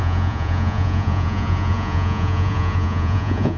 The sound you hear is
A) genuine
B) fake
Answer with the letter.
B